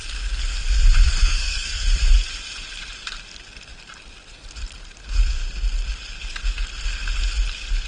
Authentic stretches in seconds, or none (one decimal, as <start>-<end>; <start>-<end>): 0.0-1.2; 1.9-7.9